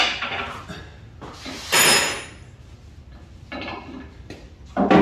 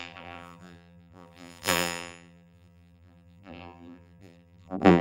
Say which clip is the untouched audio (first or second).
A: first